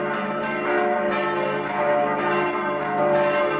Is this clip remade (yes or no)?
no